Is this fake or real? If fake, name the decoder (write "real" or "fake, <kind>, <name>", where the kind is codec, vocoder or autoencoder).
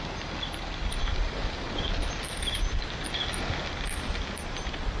real